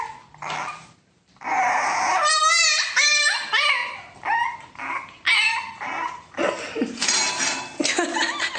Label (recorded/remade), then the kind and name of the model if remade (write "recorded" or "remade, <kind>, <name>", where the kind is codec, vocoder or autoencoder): recorded